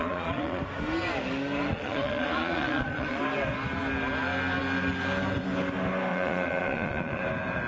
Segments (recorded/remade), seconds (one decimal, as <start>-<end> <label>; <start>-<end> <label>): 0.0-0.6 remade; 0.6-1.7 recorded; 1.7-3.2 remade; 3.2-6.1 recorded; 6.1-7.2 remade; 7.2-7.7 recorded